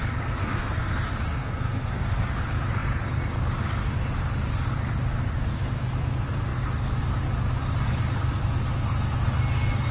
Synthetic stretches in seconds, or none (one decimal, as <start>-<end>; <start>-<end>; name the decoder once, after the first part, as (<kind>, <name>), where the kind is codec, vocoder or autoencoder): 0.4-0.9 (codec, SNAC); 1.3-2.3